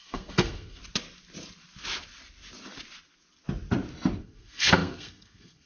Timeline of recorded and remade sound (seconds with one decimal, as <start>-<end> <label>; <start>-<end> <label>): 0.0-0.8 remade; 0.8-4.2 recorded; 4.2-5.7 remade